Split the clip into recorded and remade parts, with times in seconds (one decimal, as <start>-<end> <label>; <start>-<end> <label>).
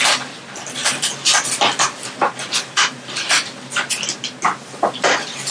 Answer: 0.0-0.8 recorded; 0.8-4.1 remade; 4.1-5.5 recorded